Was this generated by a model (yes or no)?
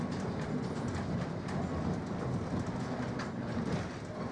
no